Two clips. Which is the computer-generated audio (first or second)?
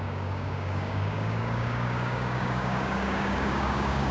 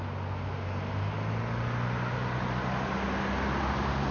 first